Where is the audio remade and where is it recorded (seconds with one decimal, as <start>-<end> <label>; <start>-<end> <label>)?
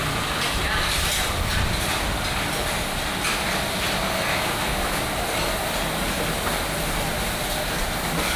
0.0-4.3 recorded; 4.3-5.0 remade; 5.0-8.4 recorded